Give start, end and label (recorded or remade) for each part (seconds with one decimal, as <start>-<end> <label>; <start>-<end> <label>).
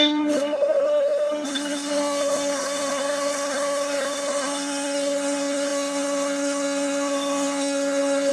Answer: 0.0-8.3 remade